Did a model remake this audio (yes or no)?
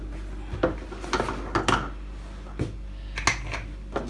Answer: no